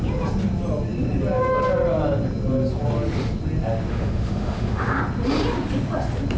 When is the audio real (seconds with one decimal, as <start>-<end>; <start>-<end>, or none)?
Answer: 0.0-3.9; 5.0-6.4